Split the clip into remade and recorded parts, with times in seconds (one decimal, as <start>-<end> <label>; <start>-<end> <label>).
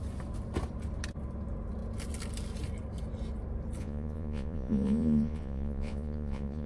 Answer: 0.0-3.8 recorded; 3.8-6.7 remade